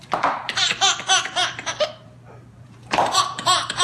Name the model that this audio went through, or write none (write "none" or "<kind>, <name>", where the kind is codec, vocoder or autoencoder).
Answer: vocoder, BigVGAN v2